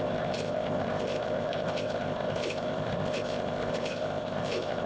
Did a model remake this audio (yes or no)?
yes